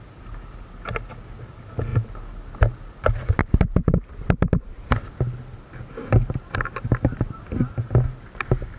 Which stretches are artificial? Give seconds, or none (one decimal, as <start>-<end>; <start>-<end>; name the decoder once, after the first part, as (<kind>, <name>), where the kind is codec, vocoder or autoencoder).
3.4-4.1 (vocoder, BigVGAN v2)